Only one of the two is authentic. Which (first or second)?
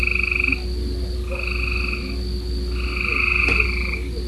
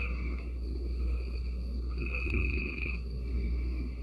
first